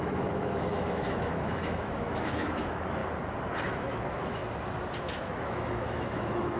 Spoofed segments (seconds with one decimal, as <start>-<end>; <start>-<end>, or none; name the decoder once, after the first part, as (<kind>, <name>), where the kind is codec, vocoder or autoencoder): 0.0-3.0 (autoencoder, DAC-VAE); 3.6-4.4; 5.1-6.6